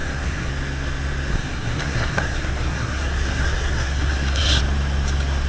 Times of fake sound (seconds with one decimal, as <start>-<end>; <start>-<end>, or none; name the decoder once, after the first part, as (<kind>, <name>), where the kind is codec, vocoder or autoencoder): 0.0-0.5 (codec, SNAC); 1.3-4.6